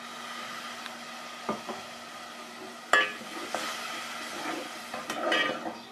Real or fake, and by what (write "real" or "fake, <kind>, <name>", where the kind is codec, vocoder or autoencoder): real